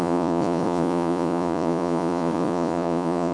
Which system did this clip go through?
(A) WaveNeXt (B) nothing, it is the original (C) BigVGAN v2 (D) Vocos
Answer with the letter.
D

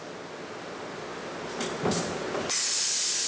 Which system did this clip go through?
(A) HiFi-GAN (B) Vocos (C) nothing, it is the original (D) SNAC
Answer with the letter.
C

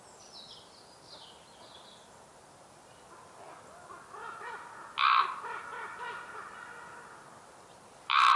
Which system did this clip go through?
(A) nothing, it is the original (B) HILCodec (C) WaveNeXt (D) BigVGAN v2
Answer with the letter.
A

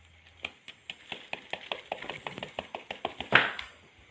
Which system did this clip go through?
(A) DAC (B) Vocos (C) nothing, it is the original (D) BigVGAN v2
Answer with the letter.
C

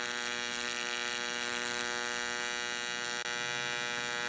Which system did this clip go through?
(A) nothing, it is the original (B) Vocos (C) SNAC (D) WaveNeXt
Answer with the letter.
A